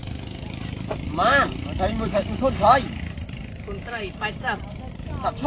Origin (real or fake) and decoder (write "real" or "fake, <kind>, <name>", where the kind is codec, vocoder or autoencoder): real